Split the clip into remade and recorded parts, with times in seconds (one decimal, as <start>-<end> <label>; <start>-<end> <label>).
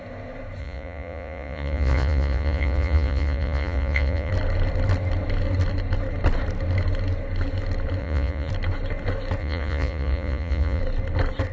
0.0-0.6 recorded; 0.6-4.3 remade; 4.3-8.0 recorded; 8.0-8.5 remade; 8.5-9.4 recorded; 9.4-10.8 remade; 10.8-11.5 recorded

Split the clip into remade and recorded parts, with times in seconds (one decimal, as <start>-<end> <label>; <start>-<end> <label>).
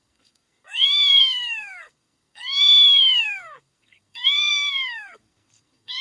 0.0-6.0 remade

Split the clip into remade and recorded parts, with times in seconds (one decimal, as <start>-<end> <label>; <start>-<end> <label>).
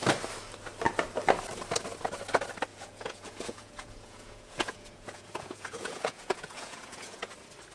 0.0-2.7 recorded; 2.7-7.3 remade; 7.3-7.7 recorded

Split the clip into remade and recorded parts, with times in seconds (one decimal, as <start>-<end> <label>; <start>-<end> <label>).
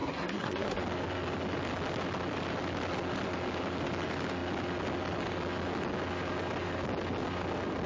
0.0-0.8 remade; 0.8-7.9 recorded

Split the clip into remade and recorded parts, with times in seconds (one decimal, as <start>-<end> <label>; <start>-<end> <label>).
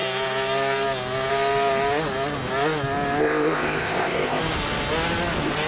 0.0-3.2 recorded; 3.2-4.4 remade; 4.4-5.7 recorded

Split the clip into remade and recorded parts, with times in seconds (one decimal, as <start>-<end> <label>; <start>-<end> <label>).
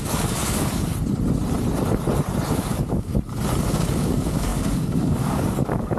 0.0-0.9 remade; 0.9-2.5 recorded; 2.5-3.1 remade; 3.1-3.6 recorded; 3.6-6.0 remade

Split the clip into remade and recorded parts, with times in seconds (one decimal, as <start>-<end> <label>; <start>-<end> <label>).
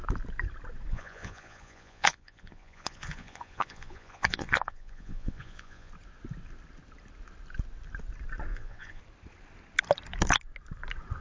0.0-0.9 recorded; 0.9-5.9 remade; 5.9-8.5 recorded; 8.5-9.0 remade; 9.0-11.2 recorded